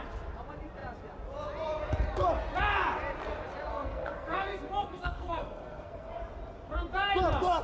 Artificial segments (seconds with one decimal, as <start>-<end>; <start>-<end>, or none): 3.7-6.1